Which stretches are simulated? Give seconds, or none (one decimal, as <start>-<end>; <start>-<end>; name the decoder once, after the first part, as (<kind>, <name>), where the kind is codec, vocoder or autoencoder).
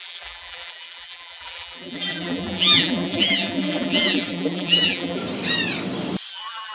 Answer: 0.0-5.2 (vocoder, BigVGAN v2); 6.3-6.7